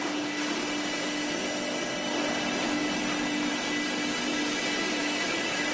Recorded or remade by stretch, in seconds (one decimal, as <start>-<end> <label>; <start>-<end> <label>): 0.0-5.0 recorded; 5.0-5.7 remade